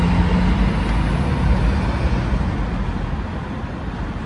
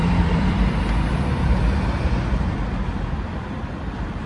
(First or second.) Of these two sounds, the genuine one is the first